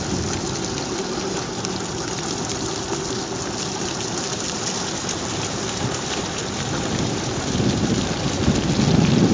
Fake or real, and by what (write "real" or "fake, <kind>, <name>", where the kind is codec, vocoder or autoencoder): real